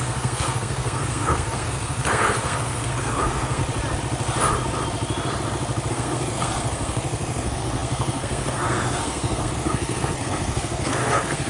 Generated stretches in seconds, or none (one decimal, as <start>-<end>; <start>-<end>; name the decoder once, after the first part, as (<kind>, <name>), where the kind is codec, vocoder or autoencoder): 0.0-3.6 (codec, SNAC); 5.9-11.5